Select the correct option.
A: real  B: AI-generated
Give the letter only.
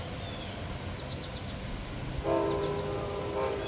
A